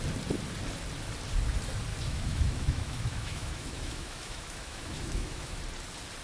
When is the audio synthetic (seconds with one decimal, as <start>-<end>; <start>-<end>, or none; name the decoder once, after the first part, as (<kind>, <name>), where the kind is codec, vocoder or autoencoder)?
1.9-5.6 (autoencoder, DAC-VAE)